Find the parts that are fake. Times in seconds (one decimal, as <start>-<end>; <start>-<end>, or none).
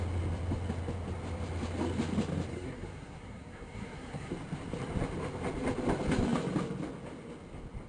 2.5-4.3